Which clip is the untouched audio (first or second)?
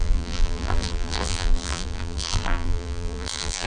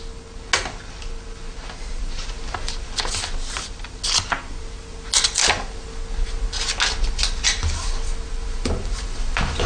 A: second